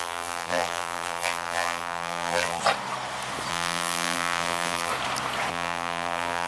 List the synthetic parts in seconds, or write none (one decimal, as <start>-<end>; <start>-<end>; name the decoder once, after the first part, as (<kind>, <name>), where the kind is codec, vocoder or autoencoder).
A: 0.0-2.6 (vocoder, BigVGAN v2); 3.5-4.9; 5.5-6.5